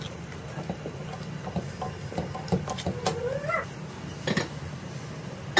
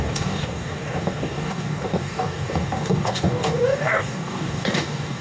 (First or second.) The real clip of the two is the first